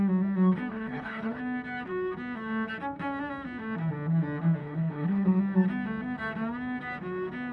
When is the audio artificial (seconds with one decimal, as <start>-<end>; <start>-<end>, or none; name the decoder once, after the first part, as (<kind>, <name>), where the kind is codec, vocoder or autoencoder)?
0.7-1.4 (codec, HILCodec); 4.6-5.4